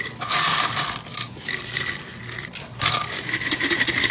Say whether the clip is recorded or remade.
recorded